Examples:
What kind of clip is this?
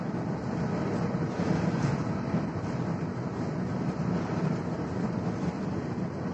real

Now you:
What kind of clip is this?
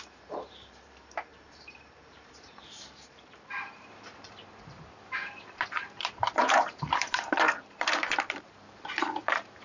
fake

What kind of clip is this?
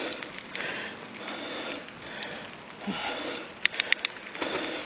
real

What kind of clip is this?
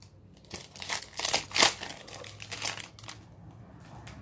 real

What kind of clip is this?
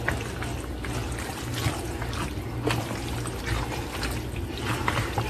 real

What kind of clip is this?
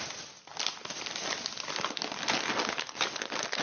real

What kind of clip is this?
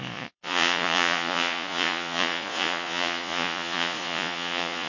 fake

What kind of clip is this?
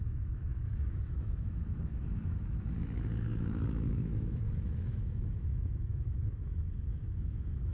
fake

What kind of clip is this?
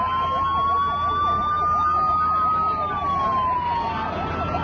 real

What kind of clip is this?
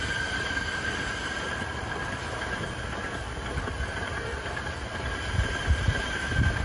fake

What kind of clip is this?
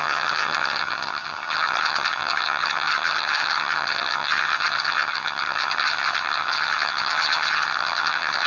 fake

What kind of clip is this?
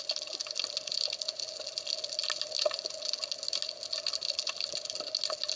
real